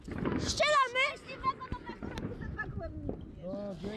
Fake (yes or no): no